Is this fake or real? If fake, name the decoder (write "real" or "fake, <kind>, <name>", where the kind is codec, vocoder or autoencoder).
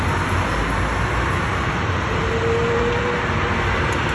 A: real